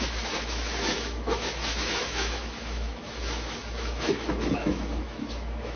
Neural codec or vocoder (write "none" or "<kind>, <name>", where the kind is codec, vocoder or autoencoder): autoencoder, DAC-VAE